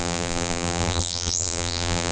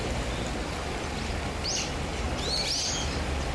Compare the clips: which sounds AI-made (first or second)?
first